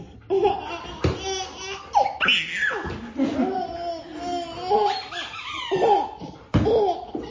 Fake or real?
real